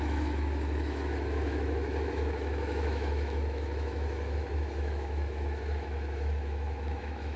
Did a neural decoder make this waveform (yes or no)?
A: yes